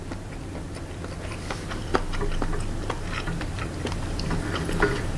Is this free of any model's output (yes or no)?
yes